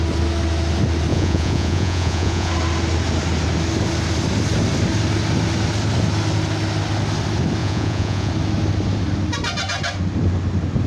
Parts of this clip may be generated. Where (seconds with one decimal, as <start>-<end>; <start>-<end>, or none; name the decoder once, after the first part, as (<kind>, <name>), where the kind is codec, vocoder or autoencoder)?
1.1-2.5 (vocoder, Vocos); 7.6-8.3